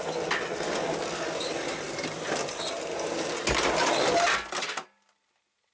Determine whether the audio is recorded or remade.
recorded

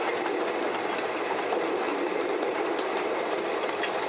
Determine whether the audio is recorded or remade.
recorded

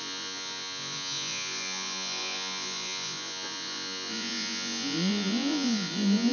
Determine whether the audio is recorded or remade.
remade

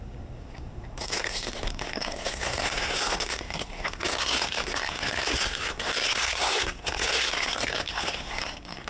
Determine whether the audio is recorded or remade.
remade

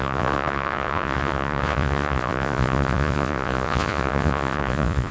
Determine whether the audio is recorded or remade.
remade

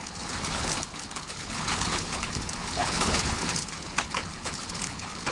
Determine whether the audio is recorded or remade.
remade